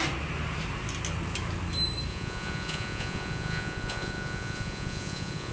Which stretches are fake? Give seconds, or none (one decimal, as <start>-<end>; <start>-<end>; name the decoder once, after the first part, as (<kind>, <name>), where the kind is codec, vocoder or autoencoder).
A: 2.1-5.5 (vocoder, Vocos)